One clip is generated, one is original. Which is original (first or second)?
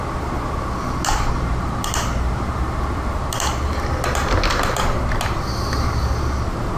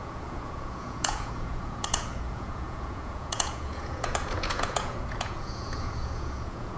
first